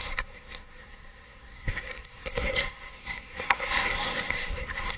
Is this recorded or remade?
remade